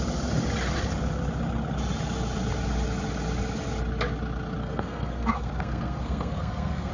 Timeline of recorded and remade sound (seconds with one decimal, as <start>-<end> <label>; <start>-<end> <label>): 0.0-4.6 recorded; 4.6-6.9 remade

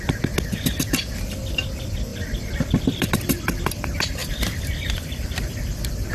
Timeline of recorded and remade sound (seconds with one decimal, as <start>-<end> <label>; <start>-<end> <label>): 0.0-2.1 recorded; 2.1-3.1 remade; 3.1-4.2 recorded; 4.2-6.1 remade

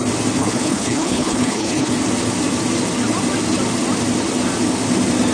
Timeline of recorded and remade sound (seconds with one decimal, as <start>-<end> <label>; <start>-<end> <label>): 0.0-0.4 recorded; 0.4-1.9 remade; 1.9-5.3 recorded

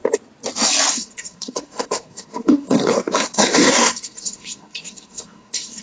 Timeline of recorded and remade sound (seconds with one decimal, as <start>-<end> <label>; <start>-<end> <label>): 0.0-0.9 recorded; 0.9-5.8 remade

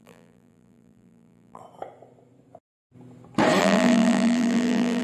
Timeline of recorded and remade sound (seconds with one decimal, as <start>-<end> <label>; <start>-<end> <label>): 0.0-1.6 remade; 1.6-3.6 recorded; 3.6-5.0 remade

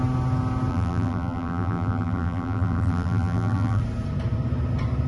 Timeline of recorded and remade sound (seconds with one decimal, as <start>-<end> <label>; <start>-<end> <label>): 0.0-0.7 recorded; 0.7-3.8 remade; 3.8-5.1 recorded

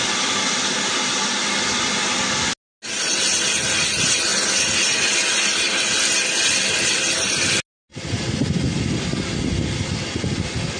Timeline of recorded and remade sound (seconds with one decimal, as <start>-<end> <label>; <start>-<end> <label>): 0.0-10.8 recorded